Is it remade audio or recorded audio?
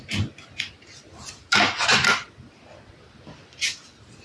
recorded